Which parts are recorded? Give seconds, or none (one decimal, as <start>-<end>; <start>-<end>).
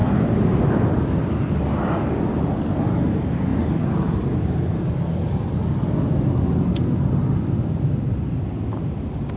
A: 0.0-9.4